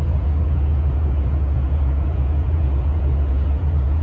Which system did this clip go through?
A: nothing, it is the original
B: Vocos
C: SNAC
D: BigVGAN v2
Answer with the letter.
B